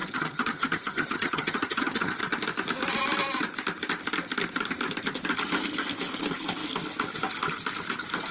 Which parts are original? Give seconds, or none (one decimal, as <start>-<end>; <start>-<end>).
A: 2.2-8.3